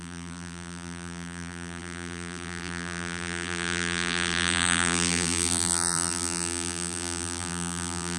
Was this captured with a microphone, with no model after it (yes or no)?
no